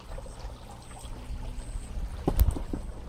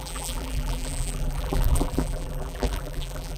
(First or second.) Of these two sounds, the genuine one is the first